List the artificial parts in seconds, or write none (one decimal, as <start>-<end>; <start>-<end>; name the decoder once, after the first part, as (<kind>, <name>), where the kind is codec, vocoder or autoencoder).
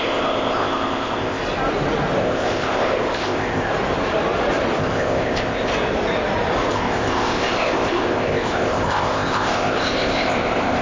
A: 0.0-1.4 (codec, ZipCodec); 2.2-3.7; 4.8-5.7; 6.7-10.8